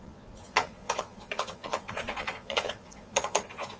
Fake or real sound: fake